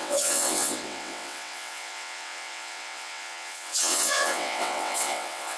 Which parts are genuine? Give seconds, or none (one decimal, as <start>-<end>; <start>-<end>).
none